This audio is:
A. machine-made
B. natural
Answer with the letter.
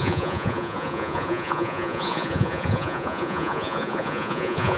A